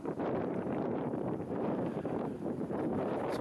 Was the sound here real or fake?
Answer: fake